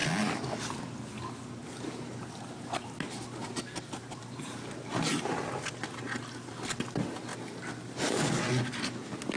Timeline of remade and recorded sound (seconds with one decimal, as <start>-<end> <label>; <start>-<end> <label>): 0.0-9.4 recorded